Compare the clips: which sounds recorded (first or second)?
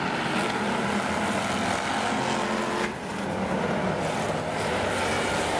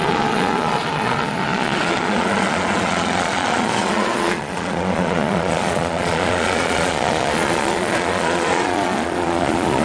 first